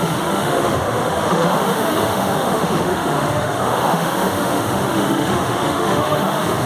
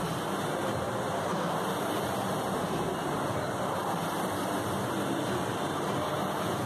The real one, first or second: second